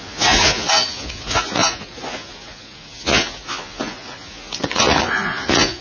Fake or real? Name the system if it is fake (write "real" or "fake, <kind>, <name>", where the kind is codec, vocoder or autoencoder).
fake, vocoder, Vocos